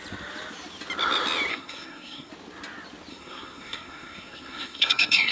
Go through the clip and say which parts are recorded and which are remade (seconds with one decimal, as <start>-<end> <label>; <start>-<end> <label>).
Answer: 0.0-1.5 recorded; 1.5-2.3 remade; 2.3-3.1 recorded; 3.1-5.3 remade